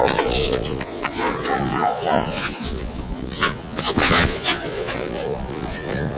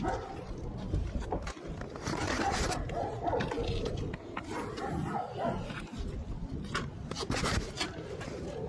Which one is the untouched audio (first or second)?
second